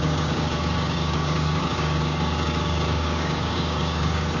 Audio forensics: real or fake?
fake